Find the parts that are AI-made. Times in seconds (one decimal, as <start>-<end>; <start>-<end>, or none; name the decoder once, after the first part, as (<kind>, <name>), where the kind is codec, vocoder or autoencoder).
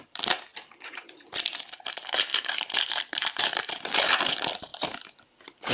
0.0-0.5 (vocoder, BigVGAN v2); 1.6-4.7